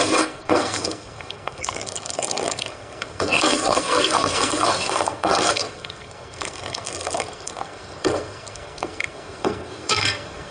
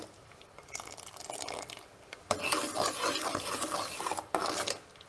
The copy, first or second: first